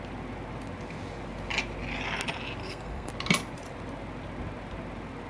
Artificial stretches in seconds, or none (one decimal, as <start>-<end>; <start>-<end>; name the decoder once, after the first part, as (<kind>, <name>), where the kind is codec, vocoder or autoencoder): 2.6-3.1 (codec, SNAC)